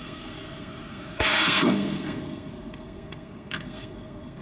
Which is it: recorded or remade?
remade